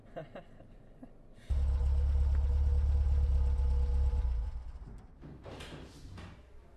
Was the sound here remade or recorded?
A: recorded